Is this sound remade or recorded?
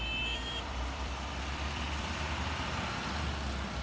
remade